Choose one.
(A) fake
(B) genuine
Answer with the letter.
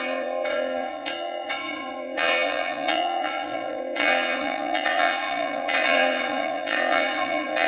A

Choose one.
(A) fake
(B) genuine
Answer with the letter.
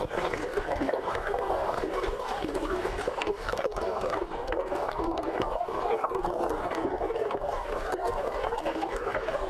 A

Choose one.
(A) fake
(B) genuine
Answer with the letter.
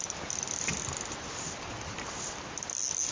B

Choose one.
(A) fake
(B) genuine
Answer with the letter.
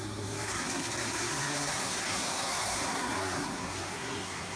A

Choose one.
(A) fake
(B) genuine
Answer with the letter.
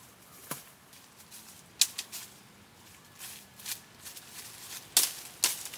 B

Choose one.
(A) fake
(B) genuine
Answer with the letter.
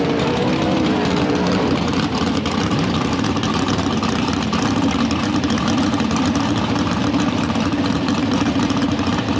A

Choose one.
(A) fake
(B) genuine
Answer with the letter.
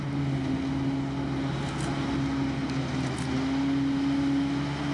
B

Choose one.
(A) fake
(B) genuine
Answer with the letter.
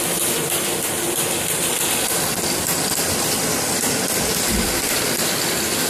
B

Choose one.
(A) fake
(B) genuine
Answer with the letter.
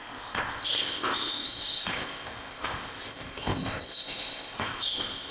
A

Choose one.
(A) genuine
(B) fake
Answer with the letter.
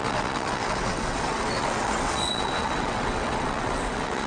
B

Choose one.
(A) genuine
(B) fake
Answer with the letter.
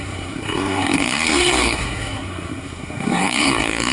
B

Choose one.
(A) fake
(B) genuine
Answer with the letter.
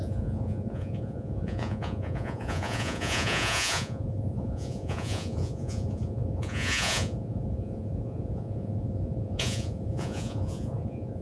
A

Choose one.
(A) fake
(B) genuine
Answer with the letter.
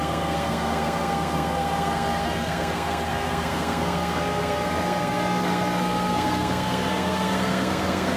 A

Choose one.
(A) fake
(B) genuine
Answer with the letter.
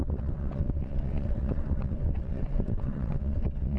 A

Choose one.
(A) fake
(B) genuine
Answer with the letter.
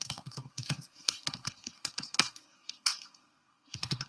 A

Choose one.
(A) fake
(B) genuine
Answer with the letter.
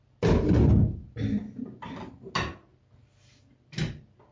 B